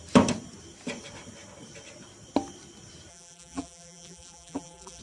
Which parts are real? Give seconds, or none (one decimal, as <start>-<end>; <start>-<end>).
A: 0.0-3.1